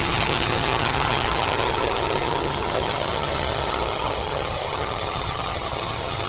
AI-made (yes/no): yes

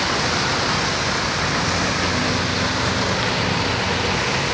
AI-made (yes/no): no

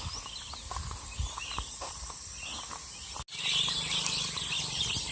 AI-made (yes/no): no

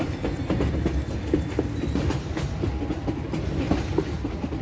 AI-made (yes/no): no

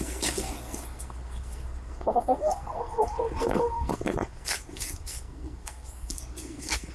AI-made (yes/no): yes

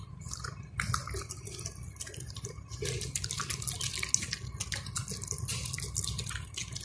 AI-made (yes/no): no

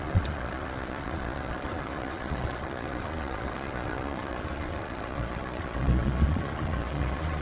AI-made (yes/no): yes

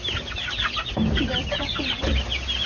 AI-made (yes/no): no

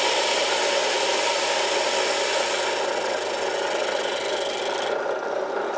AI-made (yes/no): no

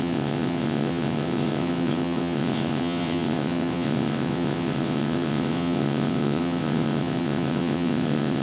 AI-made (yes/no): yes